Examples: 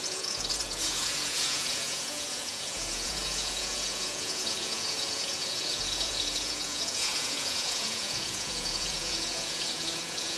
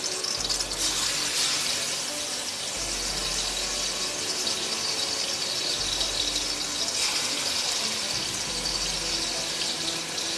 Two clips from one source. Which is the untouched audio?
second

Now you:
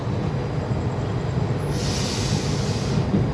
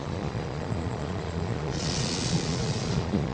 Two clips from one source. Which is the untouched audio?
first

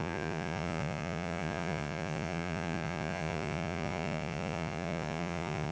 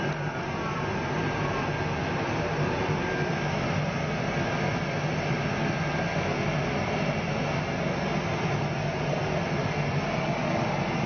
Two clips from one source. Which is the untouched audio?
second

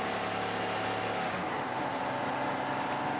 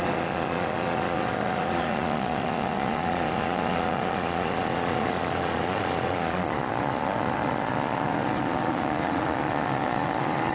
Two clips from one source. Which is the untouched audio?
first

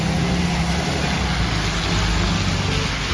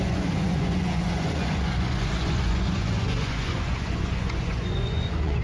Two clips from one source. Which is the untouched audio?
first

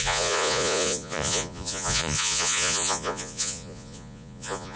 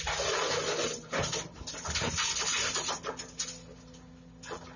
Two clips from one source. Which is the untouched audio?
second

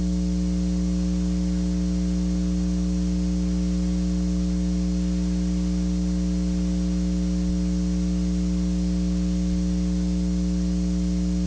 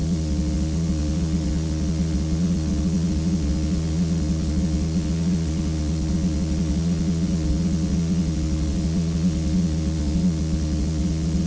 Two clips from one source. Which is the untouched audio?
first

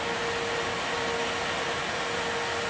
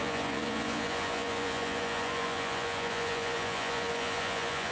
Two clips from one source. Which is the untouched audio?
first